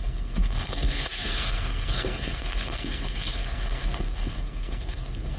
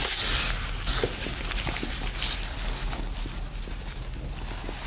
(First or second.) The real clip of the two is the second